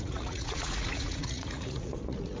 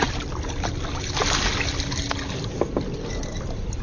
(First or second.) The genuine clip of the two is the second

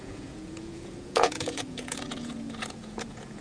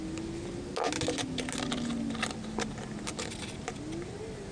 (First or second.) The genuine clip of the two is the second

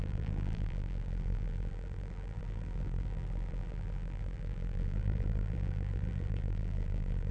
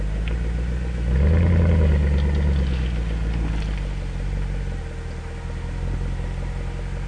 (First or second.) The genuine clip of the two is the second